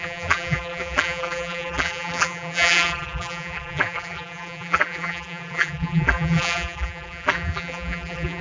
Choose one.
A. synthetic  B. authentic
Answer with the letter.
A